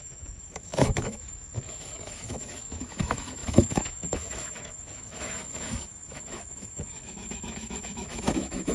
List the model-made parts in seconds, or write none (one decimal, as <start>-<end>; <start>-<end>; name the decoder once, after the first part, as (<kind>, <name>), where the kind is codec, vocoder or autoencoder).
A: 0.0-8.7 (autoencoder, DAC-VAE)